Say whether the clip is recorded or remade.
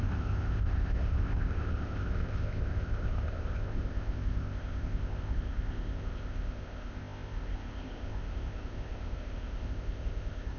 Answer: remade